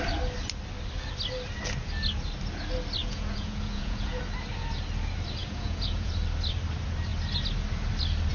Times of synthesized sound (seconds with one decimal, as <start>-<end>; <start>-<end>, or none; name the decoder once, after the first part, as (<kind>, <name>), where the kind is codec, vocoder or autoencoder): 3.0-4.2 (vocoder, Vocos); 5.4-6.1